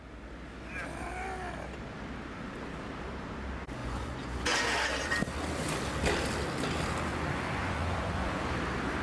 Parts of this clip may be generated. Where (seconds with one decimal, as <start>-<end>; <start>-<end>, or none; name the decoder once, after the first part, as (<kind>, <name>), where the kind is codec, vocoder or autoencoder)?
3.8-4.6 (vocoder, Vocos); 7.1-8.4